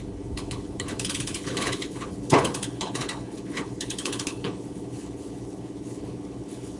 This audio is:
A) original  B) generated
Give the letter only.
B